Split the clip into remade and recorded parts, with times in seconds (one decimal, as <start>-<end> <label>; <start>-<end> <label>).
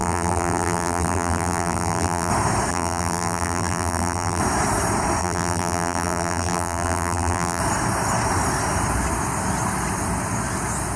0.0-2.3 remade; 2.3-2.7 recorded; 2.7-4.4 remade; 4.4-5.2 recorded; 5.2-7.6 remade; 7.6-11.0 recorded